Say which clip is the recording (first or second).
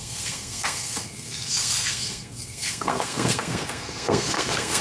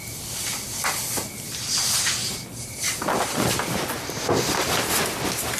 second